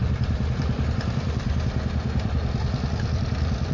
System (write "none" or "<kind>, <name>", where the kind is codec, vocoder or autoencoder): vocoder, BigVGAN v2